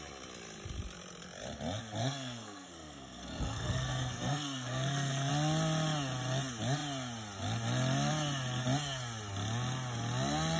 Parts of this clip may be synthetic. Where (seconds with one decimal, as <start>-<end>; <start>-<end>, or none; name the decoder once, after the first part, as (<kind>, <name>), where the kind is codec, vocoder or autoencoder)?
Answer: 2.0-5.3 (codec, SNAC)